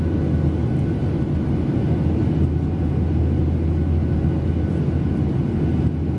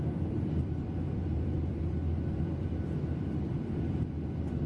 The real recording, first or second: first